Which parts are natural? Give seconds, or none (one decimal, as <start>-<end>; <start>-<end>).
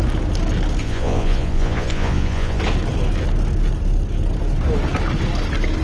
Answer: 0.0-0.8; 2.6-5.8